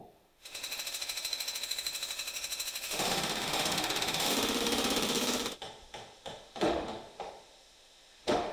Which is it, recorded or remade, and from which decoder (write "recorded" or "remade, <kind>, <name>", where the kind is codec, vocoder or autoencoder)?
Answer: remade, autoencoder, DAC-VAE